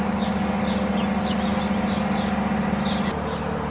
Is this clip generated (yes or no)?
no